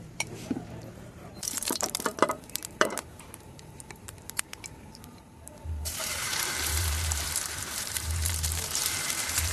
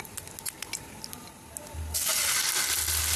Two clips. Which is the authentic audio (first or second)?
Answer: second